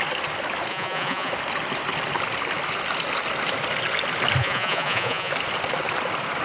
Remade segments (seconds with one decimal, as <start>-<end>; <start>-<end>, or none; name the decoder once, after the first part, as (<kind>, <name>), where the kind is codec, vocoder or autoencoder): 0.7-1.3 (vocoder, Vocos); 4.4-5.3